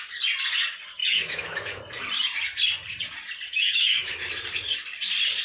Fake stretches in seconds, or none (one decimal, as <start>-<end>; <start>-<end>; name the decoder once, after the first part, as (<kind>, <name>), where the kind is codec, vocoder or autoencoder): 1.0-1.8 (autoencoder, DAC-VAE); 3.5-4.3